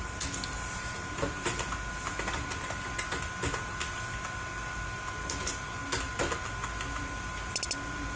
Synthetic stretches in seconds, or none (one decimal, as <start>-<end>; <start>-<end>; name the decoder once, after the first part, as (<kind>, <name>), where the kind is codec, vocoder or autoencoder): none